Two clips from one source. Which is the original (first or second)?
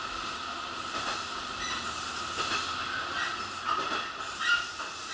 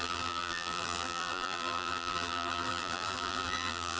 first